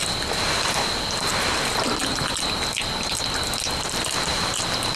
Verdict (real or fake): real